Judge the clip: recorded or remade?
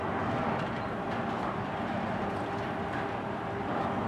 recorded